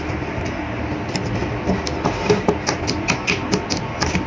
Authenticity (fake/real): real